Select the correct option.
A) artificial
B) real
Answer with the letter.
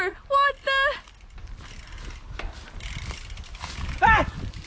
B